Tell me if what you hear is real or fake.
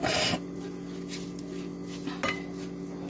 real